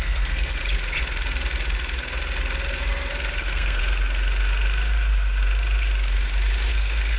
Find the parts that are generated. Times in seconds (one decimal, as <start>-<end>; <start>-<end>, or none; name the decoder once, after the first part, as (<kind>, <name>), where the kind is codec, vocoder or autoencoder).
0.0-0.6 (codec, SNAC); 3.4-3.8; 6.7-7.2